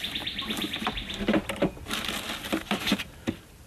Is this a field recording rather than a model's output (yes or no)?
no